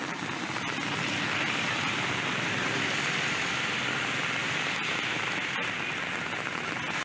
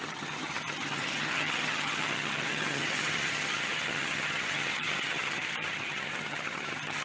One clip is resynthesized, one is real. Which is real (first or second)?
first